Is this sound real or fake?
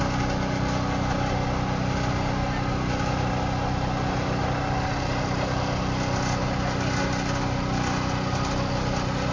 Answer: real